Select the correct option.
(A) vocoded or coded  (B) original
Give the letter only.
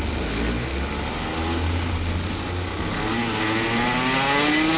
B